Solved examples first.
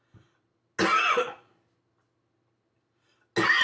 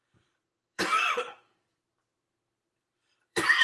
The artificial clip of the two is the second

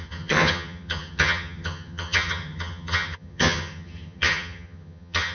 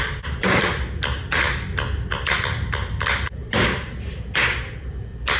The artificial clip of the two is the first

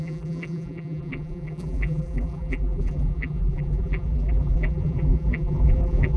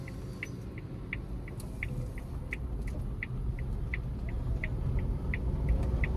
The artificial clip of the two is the first